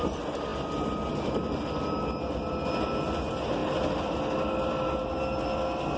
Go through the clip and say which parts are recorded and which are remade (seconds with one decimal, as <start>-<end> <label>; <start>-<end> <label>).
0.0-6.0 recorded